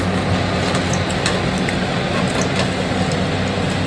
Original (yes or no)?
yes